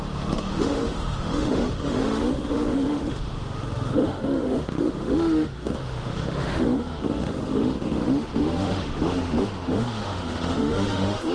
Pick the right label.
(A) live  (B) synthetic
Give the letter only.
B